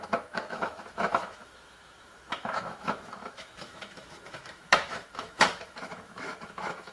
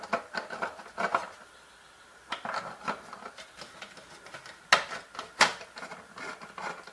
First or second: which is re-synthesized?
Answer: first